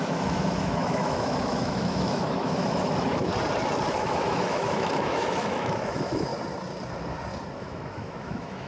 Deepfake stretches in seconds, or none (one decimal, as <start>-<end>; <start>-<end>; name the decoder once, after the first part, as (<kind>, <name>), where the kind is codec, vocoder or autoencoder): 0.0-3.3 (autoencoder, DAC-VAE); 3.9-6.3; 7.6-8.7